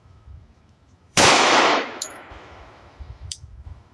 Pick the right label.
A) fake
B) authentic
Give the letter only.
A